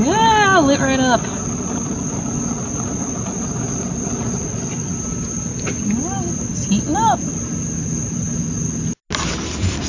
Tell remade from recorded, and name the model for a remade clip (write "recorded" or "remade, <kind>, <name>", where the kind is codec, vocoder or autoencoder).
recorded